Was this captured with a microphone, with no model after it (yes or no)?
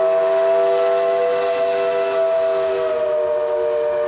yes